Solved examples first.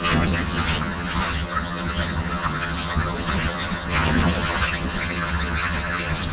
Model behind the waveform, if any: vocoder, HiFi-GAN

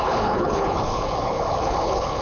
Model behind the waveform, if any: codec, HILCodec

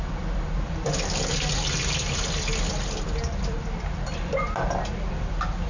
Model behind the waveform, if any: none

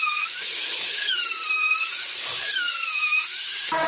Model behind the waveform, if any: autoencoder, DAC-VAE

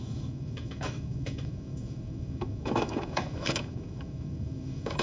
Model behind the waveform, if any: autoencoder, DAC-VAE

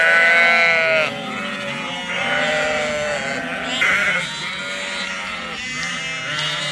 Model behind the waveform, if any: none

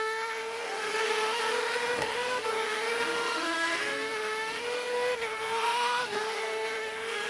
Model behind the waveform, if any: autoencoder, DAC-VAE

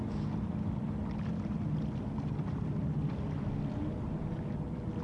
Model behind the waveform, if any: none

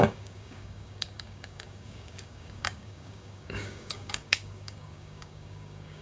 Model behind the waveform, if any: codec, DAC